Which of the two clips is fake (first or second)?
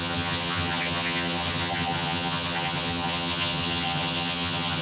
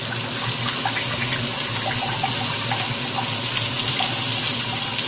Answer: first